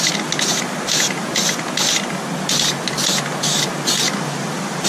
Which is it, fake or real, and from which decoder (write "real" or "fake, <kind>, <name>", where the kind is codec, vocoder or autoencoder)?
real